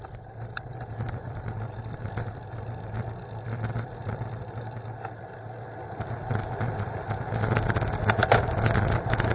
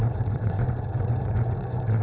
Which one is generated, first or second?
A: second